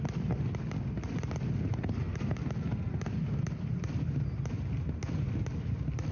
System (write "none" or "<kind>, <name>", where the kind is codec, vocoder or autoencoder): none